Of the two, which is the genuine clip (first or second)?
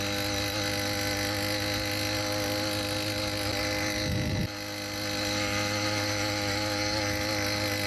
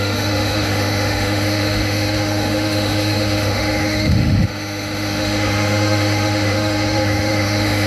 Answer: first